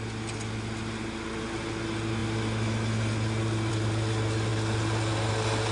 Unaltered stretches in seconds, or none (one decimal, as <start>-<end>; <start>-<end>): 0.0-5.7